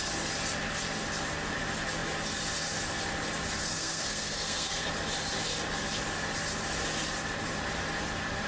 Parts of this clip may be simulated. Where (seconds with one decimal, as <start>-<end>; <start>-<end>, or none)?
3.6-4.9